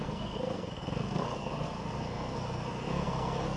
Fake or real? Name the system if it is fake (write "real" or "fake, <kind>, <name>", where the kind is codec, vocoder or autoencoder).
fake, codec, SNAC